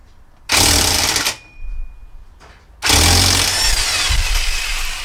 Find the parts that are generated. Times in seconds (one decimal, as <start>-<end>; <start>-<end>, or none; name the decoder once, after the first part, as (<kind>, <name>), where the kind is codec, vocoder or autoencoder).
none